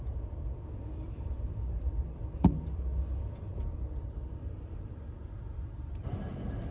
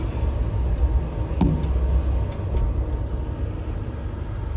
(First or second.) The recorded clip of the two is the second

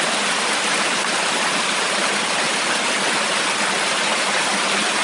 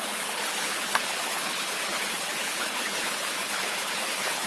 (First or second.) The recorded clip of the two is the first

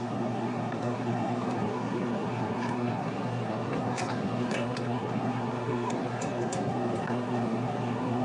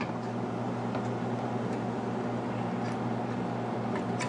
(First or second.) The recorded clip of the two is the second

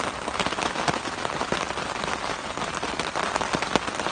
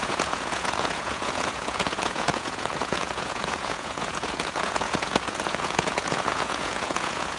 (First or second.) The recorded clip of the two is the first